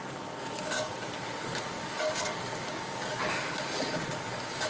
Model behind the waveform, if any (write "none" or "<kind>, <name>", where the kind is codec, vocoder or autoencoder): codec, DAC